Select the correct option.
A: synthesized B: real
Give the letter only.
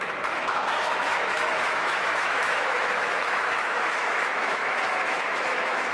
A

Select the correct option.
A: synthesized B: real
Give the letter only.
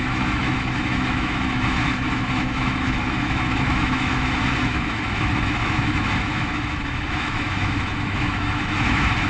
A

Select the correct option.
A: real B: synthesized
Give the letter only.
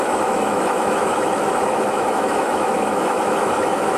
B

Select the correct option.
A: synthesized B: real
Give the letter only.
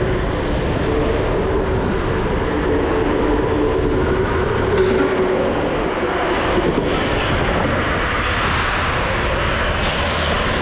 B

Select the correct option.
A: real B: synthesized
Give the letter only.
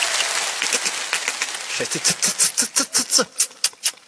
A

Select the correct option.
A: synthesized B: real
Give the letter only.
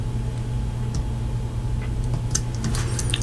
B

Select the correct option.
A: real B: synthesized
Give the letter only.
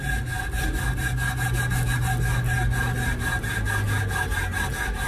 A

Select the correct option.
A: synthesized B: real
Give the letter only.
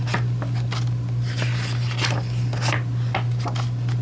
B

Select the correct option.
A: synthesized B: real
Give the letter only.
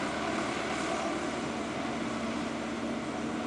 B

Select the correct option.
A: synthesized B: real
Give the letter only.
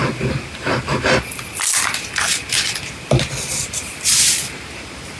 B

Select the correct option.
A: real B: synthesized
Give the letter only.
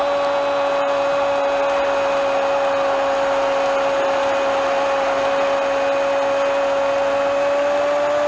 A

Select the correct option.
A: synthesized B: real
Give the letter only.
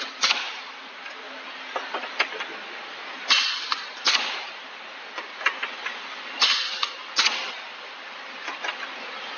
B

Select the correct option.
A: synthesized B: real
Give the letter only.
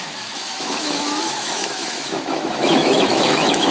A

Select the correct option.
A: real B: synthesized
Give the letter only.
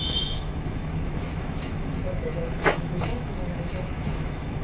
B